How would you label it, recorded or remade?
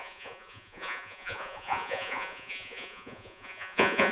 remade